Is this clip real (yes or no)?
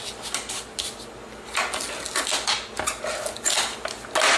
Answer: yes